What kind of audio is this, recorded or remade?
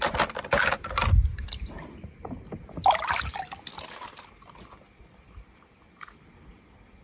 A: recorded